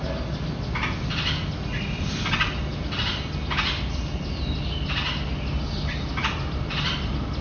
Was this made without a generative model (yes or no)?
yes